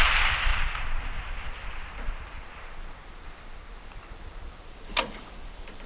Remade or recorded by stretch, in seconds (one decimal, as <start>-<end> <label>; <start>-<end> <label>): 0.0-5.9 remade